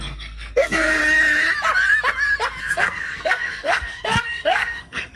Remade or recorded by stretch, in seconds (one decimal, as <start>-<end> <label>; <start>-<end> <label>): 0.0-1.0 remade; 1.0-2.6 recorded; 2.6-5.2 remade